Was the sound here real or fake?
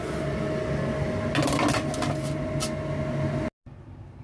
real